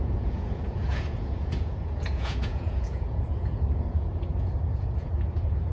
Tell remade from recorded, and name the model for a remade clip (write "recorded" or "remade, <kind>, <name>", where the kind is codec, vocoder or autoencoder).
remade, vocoder, Vocos